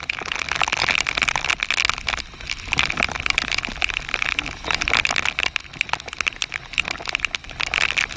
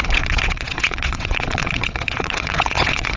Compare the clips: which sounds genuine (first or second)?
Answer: first